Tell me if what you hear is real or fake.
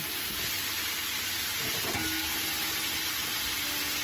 real